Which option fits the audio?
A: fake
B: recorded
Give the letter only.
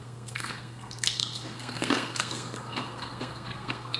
A